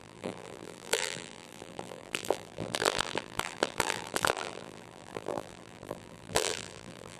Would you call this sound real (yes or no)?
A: no